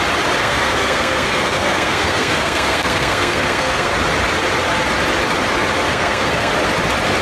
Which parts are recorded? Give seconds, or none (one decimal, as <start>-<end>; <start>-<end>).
0.0-0.4; 3.9-5.9; 6.5-7.2